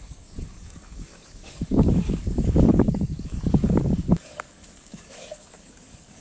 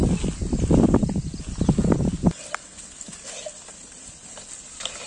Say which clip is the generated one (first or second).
first